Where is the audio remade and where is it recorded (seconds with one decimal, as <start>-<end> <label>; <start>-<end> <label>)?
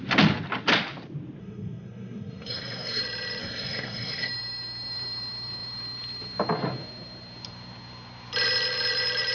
0.0-1.4 recorded; 1.4-3.0 remade; 3.0-3.4 recorded; 3.4-4.3 remade; 4.3-9.3 recorded